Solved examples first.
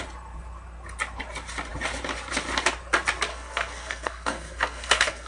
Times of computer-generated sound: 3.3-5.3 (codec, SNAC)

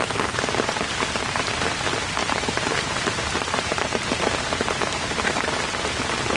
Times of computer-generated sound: 2.2-6.0 (vocoder, BigVGAN v2)

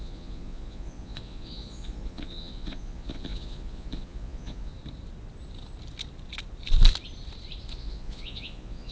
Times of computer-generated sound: 0.0-4.7 (vocoder, Vocos); 7.7-8.9

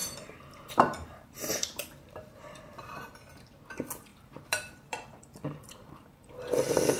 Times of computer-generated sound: 0.0-2.6 (vocoder, BigVGAN v2); 4.1-6.4